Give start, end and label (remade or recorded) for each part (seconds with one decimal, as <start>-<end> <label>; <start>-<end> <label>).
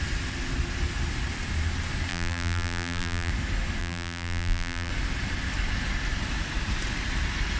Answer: 0.0-2.1 recorded; 2.1-3.3 remade; 3.3-3.8 recorded; 3.8-4.9 remade; 4.9-7.6 recorded